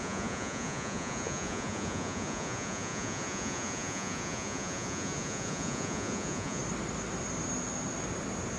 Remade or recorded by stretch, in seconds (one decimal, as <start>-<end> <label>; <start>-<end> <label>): 0.0-6.6 remade; 6.6-8.6 recorded

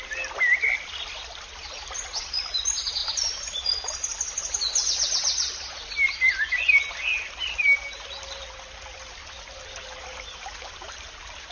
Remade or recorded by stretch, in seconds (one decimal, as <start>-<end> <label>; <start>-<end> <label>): 0.0-11.5 recorded

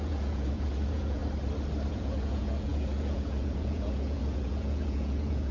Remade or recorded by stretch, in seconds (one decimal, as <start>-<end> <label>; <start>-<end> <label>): 0.0-1.2 remade; 1.2-1.9 recorded; 1.9-5.5 remade

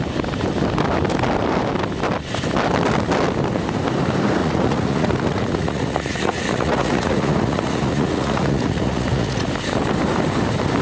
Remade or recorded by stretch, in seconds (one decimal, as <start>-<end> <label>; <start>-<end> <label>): 0.0-4.4 recorded; 4.4-9.5 remade; 9.5-10.8 recorded

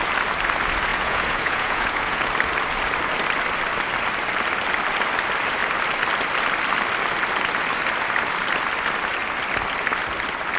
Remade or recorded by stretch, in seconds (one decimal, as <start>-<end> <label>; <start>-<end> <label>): 0.0-0.9 recorded; 0.9-2.2 remade; 2.2-10.6 recorded